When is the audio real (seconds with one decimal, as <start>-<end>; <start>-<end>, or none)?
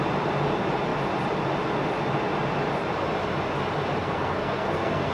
0.0-4.0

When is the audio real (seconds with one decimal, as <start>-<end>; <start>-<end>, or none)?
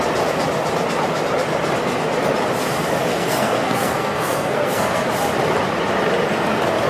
0.0-3.1; 5.1-6.9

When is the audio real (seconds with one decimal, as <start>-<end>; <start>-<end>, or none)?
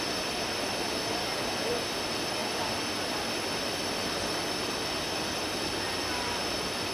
0.0-6.9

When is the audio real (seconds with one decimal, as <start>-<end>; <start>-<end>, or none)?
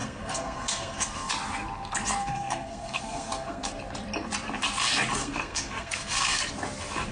1.3-2.2; 3.7-5.2; 6.4-7.1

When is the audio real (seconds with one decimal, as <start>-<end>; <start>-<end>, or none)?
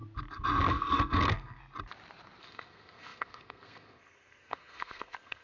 0.0-0.7; 1.6-2.4